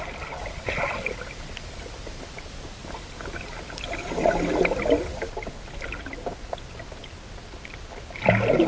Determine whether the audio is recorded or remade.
recorded